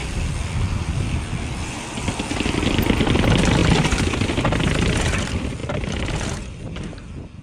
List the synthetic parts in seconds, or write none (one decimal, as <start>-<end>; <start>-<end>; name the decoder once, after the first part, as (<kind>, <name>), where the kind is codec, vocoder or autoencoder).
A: none